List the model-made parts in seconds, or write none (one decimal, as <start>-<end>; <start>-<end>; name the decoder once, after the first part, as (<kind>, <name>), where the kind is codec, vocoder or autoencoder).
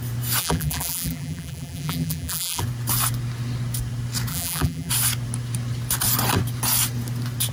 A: 0.4-2.6 (vocoder, BigVGAN v2); 4.3-4.9